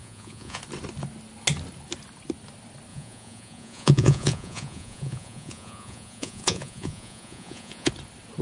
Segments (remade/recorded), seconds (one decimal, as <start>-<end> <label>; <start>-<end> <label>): 0.0-0.6 remade; 0.6-2.9 recorded; 2.9-7.9 remade; 7.9-8.4 recorded

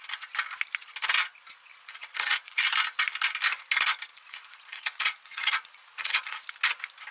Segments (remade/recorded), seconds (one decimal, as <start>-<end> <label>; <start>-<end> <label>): 0.0-1.7 recorded; 1.7-2.7 remade; 2.7-4.1 recorded; 4.1-6.4 remade; 6.4-7.1 recorded

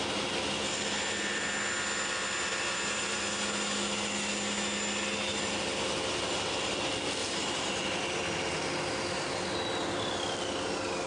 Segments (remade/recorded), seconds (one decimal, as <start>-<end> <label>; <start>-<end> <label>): 0.0-2.7 recorded; 2.7-3.2 remade; 3.2-7.2 recorded; 7.2-7.8 remade; 7.8-11.1 recorded

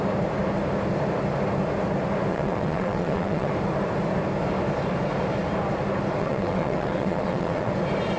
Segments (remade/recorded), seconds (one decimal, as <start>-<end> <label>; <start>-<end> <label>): 0.0-2.3 recorded; 2.3-3.5 remade; 3.5-6.2 recorded; 6.2-7.7 remade; 7.7-8.2 recorded

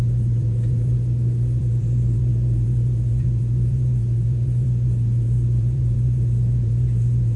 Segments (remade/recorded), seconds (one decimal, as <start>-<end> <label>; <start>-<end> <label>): 0.0-0.9 remade; 0.9-1.6 recorded; 1.6-7.4 remade